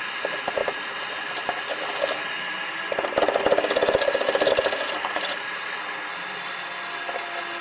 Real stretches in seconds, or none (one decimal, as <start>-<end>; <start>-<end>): 0.0-7.6